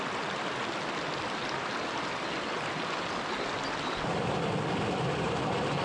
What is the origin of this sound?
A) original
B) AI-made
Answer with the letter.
A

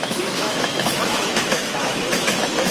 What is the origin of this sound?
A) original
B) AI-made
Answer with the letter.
B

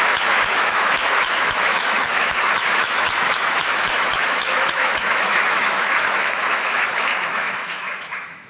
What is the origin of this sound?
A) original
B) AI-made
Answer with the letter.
B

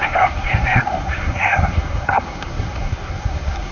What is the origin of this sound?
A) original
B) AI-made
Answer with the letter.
B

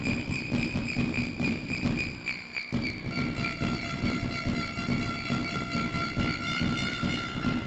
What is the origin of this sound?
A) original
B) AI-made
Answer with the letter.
B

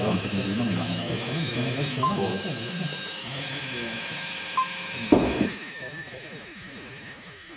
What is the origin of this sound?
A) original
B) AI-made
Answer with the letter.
B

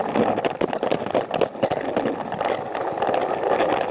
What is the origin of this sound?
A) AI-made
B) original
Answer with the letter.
B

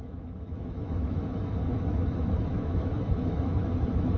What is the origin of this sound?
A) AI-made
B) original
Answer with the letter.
A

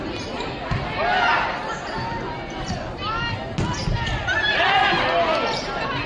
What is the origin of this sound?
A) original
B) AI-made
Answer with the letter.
A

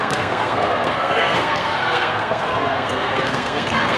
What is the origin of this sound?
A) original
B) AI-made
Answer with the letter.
B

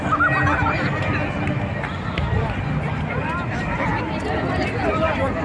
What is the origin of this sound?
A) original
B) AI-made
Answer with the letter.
A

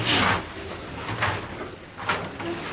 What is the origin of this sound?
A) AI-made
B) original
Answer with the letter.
B